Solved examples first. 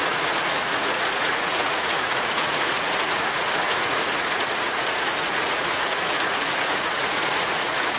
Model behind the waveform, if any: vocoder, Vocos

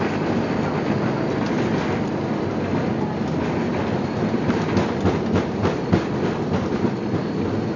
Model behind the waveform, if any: none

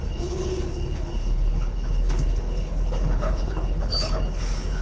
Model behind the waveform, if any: codec, HILCodec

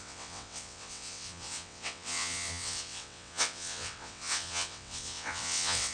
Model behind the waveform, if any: vocoder, WaveNeXt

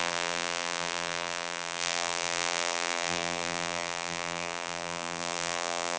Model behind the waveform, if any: vocoder, BigVGAN v2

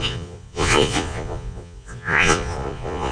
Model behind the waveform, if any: vocoder, Vocos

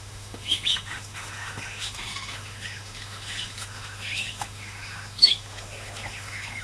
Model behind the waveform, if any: autoencoder, DAC-VAE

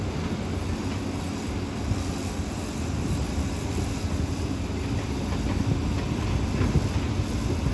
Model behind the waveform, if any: none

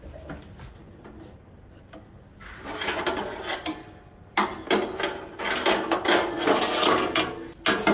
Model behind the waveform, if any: none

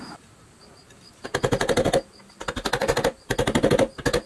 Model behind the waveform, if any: none